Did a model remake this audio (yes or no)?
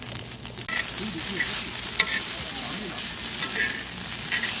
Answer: no